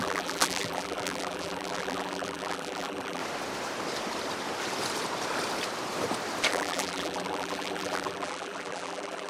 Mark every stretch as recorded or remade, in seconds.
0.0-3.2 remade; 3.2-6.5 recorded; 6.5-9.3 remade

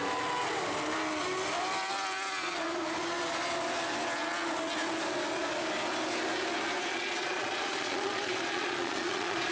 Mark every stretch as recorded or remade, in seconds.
0.0-6.9 recorded; 6.9-9.5 remade

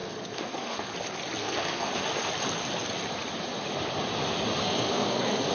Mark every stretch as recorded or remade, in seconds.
0.0-0.9 remade; 0.9-1.4 recorded; 1.4-1.9 remade; 1.9-4.6 recorded; 4.6-5.5 remade

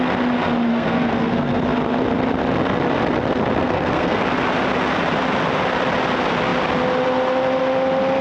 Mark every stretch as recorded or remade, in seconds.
0.0-0.7 recorded; 0.7-1.6 remade; 1.6-3.6 recorded; 3.6-4.2 remade; 4.2-8.2 recorded